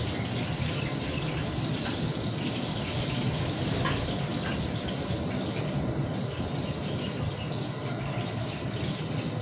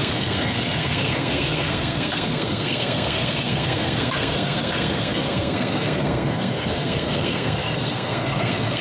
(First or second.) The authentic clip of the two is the first